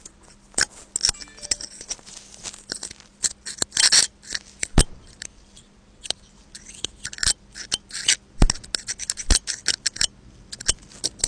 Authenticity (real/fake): real